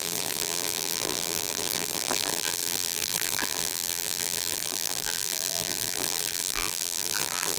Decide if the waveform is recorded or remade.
remade